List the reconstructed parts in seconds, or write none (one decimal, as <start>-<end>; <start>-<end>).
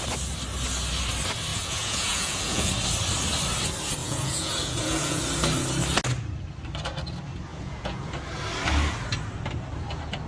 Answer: 1.5-2.7; 4.0-5.2; 7.5-8.1